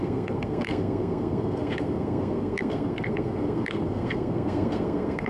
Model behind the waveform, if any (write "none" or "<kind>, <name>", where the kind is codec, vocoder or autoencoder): codec, SNAC